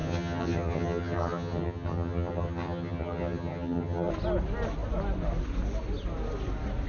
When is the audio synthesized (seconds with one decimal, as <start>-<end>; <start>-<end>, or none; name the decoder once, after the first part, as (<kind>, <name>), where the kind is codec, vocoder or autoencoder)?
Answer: 0.0-4.1 (vocoder, HiFi-GAN)